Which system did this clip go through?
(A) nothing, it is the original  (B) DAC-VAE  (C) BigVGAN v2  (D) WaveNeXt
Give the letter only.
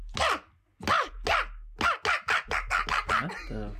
A